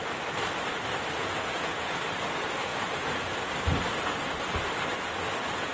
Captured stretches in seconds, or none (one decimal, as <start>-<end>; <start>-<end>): 0.0-1.2; 2.0-2.7; 3.5-5.7